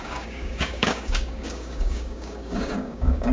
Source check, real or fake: fake